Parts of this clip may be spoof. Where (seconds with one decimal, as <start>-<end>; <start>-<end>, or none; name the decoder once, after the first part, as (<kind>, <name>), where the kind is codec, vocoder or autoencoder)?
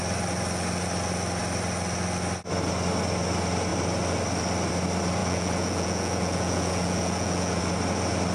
5.2-7.6 (vocoder, Vocos)